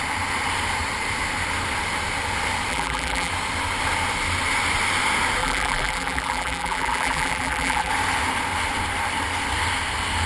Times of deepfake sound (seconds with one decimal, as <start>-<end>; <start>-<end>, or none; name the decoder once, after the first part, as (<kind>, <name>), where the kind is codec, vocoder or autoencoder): 2.7-3.3 (vocoder, BigVGAN v2); 5.4-7.9

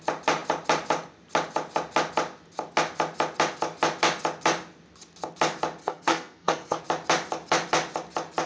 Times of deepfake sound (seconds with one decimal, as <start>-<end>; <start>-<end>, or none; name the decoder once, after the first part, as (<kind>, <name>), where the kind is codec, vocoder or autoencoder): 5.8-6.8 (codec, SNAC)

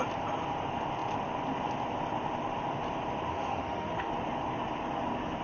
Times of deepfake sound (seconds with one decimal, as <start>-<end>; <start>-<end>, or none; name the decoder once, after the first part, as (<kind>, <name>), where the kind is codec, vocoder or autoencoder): 3.3-4.1 (autoencoder, DAC-VAE)

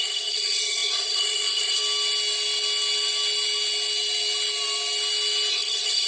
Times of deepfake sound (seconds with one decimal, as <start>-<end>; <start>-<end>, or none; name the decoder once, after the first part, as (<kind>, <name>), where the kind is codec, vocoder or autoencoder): 0.0-1.8 (codec, SNAC); 5.5-6.1

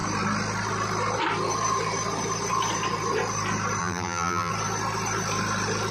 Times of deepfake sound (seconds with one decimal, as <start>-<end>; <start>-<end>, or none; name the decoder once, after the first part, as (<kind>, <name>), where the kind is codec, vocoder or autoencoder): 3.8-4.5 (vocoder, BigVGAN v2)

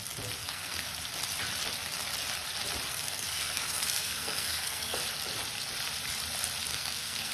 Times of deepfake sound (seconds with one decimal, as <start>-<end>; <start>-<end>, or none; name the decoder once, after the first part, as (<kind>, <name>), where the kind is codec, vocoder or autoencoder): 0.4-0.9 (codec, SNAC); 2.9-5.0; 6.7-7.3

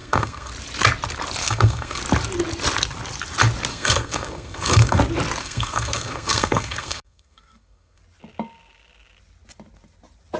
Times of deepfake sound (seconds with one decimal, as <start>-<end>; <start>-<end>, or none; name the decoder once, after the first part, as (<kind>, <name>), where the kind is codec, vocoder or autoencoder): 0.0-0.5 (codec, SNAC); 1.4-2.0; 3.7-5.0; 5.4-8.0